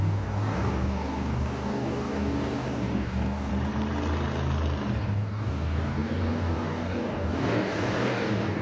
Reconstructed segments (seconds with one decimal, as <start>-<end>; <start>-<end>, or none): 0.0-3.5; 5.0-8.6